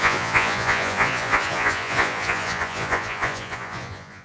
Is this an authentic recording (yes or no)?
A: no